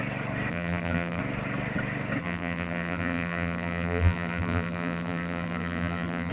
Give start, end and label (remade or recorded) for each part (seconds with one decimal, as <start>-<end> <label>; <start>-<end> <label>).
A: 0.0-0.5 recorded; 0.5-1.2 remade; 1.2-2.2 recorded; 2.2-6.3 remade